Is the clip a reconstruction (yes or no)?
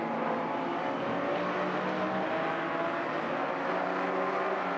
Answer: no